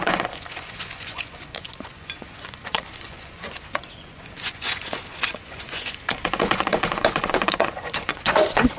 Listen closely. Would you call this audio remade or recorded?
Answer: remade